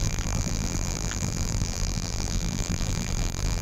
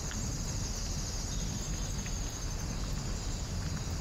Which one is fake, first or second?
first